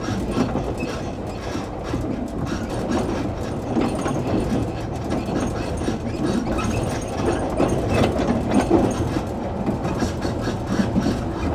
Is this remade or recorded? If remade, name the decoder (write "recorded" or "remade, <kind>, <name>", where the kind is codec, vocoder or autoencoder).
recorded